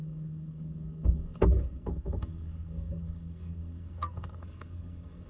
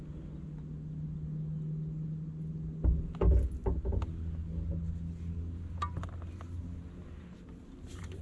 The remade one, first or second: first